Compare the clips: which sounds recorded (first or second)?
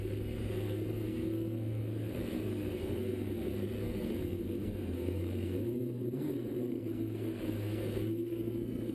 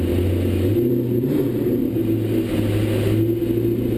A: second